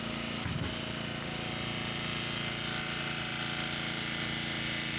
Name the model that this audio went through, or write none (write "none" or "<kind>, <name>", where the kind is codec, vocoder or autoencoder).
none